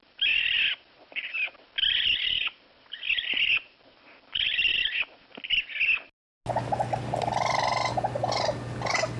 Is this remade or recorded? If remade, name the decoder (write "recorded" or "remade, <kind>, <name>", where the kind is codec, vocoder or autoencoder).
recorded